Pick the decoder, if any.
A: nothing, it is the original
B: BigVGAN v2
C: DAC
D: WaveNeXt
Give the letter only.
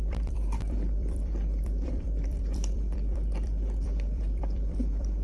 B